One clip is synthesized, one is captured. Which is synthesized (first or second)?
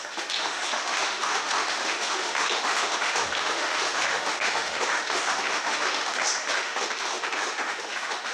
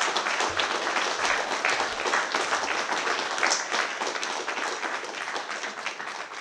first